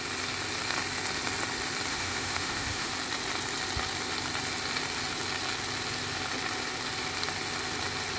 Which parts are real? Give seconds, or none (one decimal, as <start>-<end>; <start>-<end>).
0.0-1.9; 2.9-8.2